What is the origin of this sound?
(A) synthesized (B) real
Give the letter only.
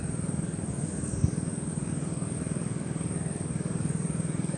A